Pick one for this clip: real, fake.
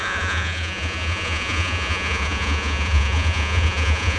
fake